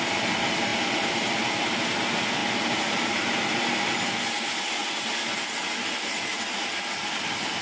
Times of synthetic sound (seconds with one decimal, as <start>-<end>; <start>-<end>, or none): 0.7-1.3